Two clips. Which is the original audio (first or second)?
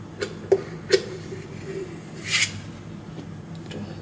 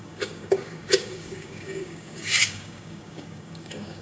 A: first